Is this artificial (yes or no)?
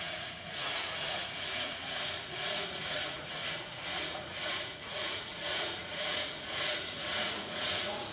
yes